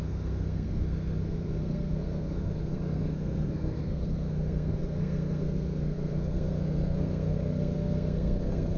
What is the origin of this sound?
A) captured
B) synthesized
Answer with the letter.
B